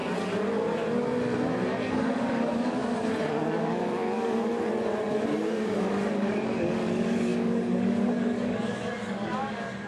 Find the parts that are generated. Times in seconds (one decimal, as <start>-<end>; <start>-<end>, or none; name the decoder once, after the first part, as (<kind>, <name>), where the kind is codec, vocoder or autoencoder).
1.9-2.8 (codec, DAC); 3.3-4.5; 5.1-9.9